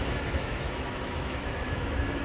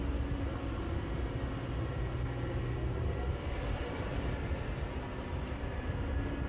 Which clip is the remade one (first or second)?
first